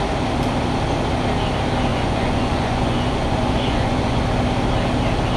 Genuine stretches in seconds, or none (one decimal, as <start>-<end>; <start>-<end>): 0.0-1.9; 4.2-5.4